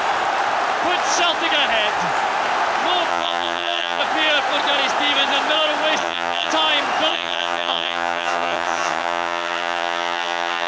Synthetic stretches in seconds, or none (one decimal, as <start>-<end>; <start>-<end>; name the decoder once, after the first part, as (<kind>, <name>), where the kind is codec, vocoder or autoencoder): 3.1-4.0 (vocoder, HiFi-GAN); 6.0-6.5; 7.1-10.7